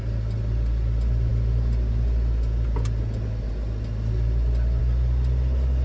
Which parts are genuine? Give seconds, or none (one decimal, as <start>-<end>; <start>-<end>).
0.0-5.8